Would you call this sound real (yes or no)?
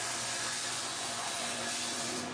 no